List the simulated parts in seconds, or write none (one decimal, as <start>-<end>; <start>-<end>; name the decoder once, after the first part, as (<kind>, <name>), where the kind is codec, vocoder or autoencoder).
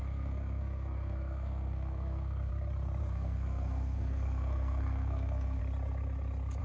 0.0-2.5 (codec, SNAC); 3.0-5.6